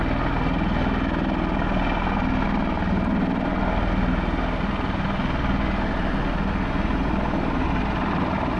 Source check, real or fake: real